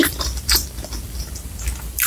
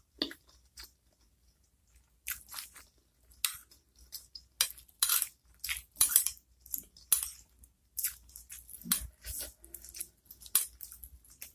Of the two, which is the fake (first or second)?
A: first